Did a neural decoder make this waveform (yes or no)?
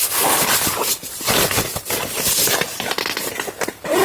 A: no